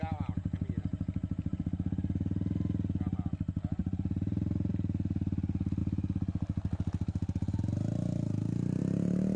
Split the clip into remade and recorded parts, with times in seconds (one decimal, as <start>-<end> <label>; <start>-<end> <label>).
0.0-0.9 recorded; 0.9-1.6 remade; 1.6-3.8 recorded; 3.8-4.7 remade; 4.7-9.4 recorded